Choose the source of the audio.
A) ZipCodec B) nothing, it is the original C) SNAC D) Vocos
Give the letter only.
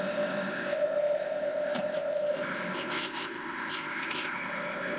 A